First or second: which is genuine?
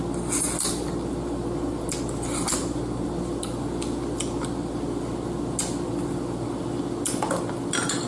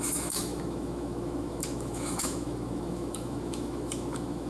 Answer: first